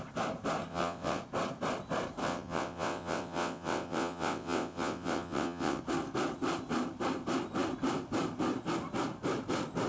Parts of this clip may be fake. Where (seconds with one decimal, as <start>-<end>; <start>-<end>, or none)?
0.7-1.2; 2.2-5.8